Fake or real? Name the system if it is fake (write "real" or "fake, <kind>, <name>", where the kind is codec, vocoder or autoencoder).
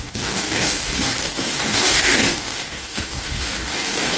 fake, codec, DAC